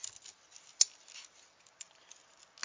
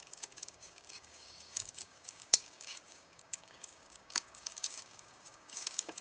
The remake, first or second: second